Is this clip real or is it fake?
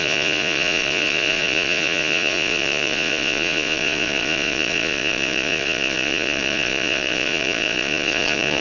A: fake